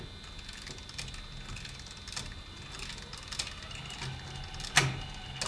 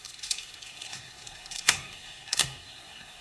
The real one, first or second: first